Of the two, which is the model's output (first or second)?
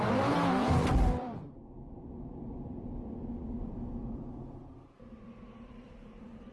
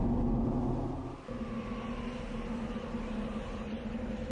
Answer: first